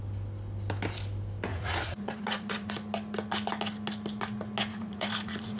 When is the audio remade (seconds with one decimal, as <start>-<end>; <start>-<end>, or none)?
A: 1.5-2.7; 4.7-5.6